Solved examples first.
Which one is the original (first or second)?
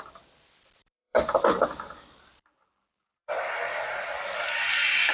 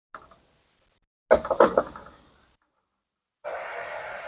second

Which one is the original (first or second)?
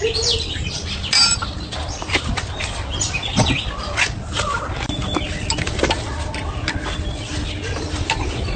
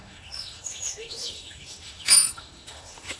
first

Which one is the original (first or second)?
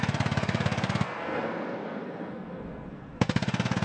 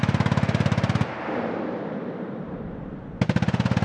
second